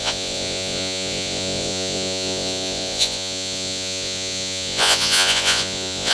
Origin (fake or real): fake